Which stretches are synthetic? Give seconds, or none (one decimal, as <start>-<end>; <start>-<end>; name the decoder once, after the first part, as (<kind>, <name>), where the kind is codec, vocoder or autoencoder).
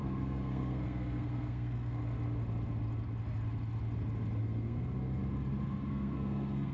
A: 0.0-2.0 (codec, SNAC); 4.4-5.2; 5.9-6.7